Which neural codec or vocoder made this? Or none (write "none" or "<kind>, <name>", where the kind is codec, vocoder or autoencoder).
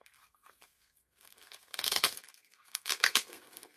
codec, SNAC